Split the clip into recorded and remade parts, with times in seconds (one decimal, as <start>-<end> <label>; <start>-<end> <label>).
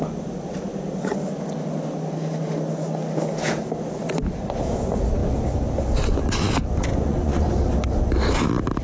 0.0-6.9 recorded; 6.9-7.5 remade; 7.5-8.8 recorded